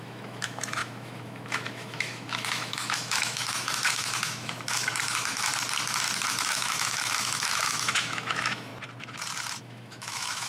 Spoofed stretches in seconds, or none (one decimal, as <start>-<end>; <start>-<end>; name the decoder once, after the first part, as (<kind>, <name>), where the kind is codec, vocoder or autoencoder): 0.0-5.5 (autoencoder, DAC-VAE); 6.3-8.7; 9.6-10.5